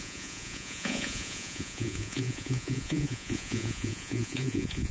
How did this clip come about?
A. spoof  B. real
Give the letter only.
A